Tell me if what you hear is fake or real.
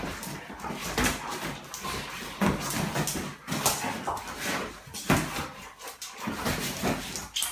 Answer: real